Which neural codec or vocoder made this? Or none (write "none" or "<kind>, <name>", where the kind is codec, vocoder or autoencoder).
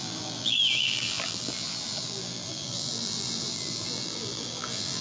vocoder, BigVGAN v2